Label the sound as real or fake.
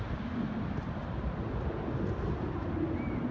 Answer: real